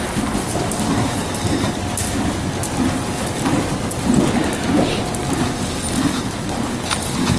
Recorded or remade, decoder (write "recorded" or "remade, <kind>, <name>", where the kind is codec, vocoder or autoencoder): recorded